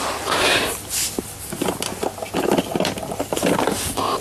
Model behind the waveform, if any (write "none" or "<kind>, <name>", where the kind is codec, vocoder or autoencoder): none